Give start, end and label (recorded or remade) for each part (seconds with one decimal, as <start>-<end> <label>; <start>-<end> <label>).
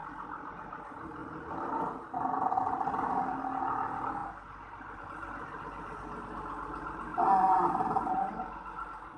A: 0.0-9.2 recorded